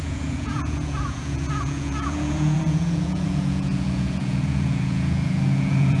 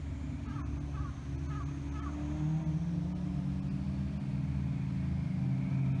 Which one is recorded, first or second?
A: second